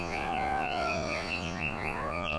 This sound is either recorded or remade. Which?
remade